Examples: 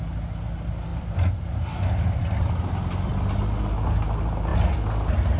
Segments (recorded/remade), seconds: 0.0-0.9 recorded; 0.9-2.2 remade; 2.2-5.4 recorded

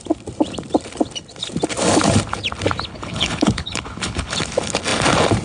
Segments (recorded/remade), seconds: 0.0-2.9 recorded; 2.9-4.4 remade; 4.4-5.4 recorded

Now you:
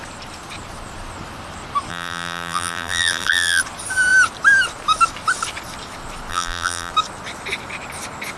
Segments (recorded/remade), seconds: 0.0-1.9 recorded; 1.9-3.6 remade; 3.6-6.3 recorded; 6.3-6.9 remade; 6.9-8.4 recorded

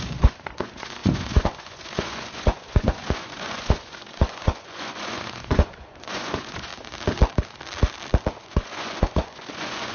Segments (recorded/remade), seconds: 0.0-6.7 remade; 6.7-8.4 recorded; 8.4-9.9 remade